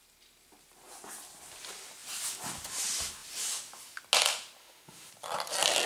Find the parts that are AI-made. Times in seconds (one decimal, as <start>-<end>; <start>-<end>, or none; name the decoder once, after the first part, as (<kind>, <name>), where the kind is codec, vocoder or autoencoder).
4.6-5.1 (autoencoder, DAC-VAE)

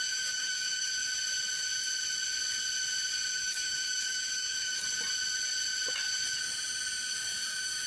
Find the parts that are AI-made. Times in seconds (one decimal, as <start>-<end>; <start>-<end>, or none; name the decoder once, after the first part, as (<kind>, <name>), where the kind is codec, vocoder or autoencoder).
0.0-1.0 (autoencoder, DAC-VAE); 3.3-4.8; 7.1-7.9

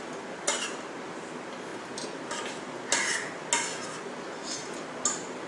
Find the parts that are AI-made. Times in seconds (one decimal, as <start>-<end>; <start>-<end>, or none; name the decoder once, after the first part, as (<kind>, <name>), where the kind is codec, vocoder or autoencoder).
none

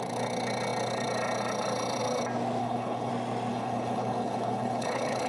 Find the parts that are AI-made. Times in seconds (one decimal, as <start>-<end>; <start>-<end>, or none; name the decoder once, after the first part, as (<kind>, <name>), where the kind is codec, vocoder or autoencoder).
2.6-3.1 (codec, HILCodec); 3.5-5.3

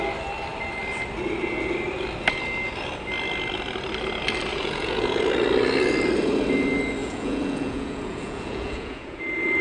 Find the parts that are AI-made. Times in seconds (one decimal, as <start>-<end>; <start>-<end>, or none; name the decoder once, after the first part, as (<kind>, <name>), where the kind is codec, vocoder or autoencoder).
4.5-5.2 (vocoder, Vocos); 7.0-9.2

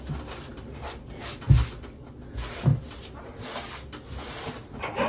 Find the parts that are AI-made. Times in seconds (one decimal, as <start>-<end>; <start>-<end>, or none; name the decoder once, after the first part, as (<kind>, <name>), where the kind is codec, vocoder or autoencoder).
0.5-1.2 (vocoder, BigVGAN v2)

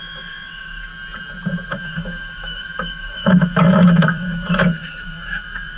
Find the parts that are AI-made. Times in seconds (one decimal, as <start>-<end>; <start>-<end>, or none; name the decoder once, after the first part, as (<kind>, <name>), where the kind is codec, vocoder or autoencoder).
0.0-0.9 (autoencoder, DAC-VAE); 1.7-5.8

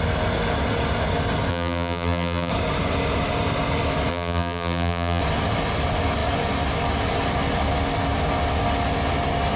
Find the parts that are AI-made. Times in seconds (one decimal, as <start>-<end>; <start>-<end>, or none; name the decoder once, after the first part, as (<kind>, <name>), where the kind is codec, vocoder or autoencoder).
1.5-2.5 (vocoder, BigVGAN v2); 4.1-5.2